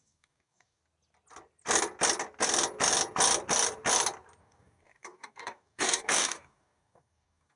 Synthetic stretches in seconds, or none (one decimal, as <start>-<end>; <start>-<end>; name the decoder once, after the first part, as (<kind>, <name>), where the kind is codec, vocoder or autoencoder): 0.0-0.8 (codec, DAC); 4.4-7.6